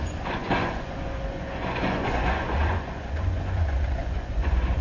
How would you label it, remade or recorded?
remade